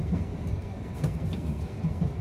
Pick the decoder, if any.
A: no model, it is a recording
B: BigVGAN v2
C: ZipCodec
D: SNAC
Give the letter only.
D